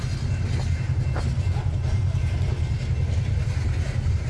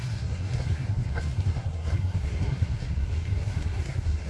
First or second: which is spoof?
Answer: second